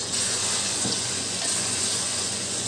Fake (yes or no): yes